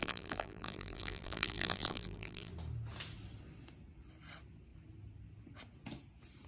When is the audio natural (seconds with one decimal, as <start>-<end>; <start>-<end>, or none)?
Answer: 2.5-6.5

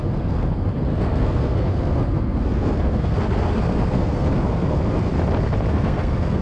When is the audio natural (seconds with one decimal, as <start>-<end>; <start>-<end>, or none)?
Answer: 5.1-5.7

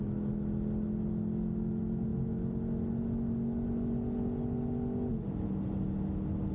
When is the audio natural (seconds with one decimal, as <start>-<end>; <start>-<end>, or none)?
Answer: 0.0-6.5

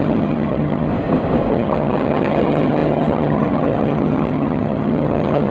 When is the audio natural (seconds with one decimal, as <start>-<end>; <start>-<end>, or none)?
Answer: 0.9-1.5

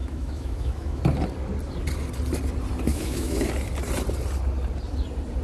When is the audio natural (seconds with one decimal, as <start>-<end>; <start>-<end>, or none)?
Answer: 1.0-2.9; 3.5-5.4